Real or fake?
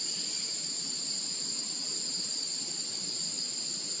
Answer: real